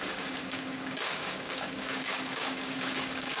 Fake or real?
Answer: fake